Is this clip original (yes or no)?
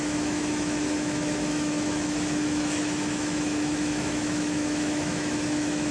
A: no